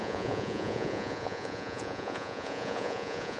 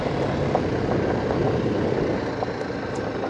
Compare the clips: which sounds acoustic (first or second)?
second